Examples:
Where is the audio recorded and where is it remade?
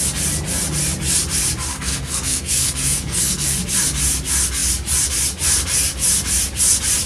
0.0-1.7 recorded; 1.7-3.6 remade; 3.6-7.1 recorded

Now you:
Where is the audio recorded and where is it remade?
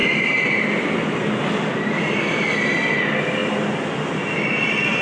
0.0-5.0 recorded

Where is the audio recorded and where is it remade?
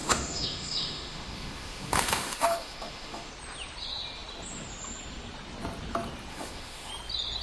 0.0-3.3 remade; 3.3-6.3 recorded; 6.3-6.9 remade; 6.9-7.4 recorded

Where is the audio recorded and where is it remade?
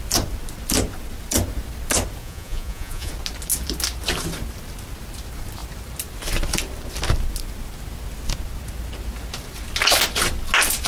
0.0-2.2 recorded; 2.2-3.1 remade; 3.1-10.9 recorded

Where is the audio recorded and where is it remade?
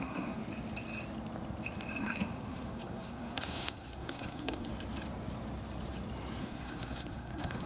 0.0-0.4 remade; 0.4-2.0 recorded; 2.0-4.7 remade; 4.7-6.4 recorded; 6.4-7.7 remade